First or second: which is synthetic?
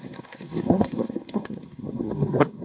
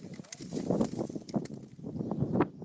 first